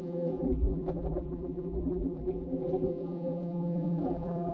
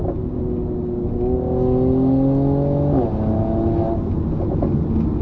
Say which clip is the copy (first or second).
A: first